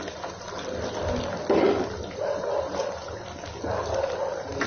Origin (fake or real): real